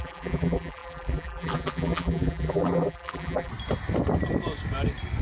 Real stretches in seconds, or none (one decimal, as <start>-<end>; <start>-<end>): 3.5-5.2